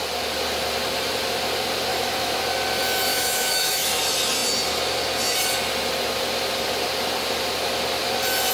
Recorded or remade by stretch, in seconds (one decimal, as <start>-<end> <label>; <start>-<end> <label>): 0.0-1.9 recorded; 1.9-2.4 remade; 2.4-3.1 recorded; 3.1-4.0 remade; 4.0-8.5 recorded